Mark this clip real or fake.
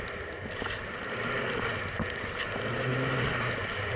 real